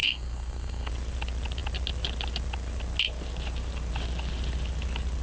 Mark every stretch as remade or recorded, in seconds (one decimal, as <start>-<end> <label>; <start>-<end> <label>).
0.0-0.9 remade; 0.9-5.2 recorded